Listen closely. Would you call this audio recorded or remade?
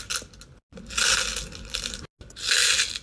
recorded